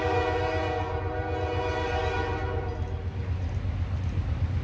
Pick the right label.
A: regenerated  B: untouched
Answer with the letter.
B